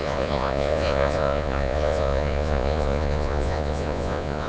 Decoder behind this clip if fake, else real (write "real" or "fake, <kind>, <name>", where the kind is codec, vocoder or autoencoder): fake, vocoder, Vocos